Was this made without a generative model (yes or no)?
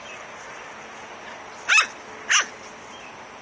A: yes